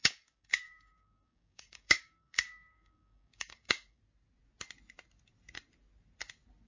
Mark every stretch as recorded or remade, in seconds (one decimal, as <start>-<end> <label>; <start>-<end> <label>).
0.0-4.0 remade; 4.0-6.7 recorded